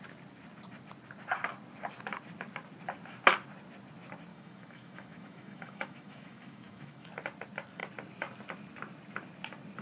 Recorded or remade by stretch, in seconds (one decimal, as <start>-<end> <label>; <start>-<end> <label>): 0.0-4.3 recorded; 4.3-7.1 remade; 7.1-9.8 recorded